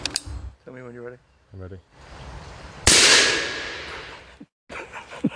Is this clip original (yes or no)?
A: yes